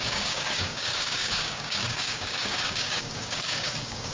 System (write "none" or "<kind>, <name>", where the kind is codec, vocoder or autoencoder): codec, DAC